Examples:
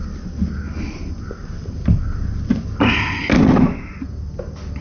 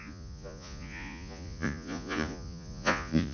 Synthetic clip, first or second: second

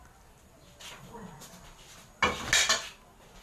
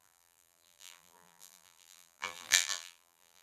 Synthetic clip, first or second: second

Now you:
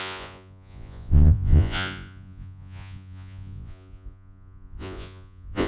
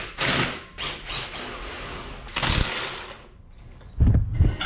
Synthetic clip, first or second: first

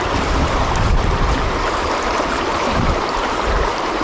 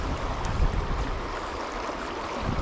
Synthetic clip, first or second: first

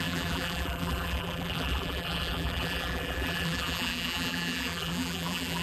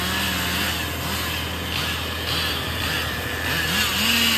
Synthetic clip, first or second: first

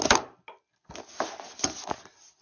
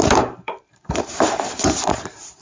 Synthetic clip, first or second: second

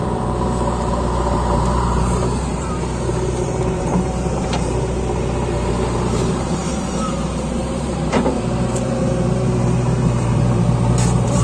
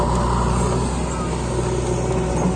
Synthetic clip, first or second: first